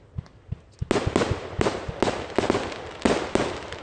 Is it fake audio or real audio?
real